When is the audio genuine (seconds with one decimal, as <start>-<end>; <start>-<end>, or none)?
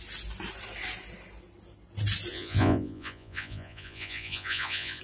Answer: 0.0-2.3